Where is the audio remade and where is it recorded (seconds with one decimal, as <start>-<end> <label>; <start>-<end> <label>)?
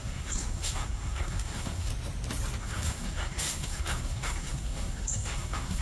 0.0-1.9 remade; 1.9-2.6 recorded; 2.6-5.8 remade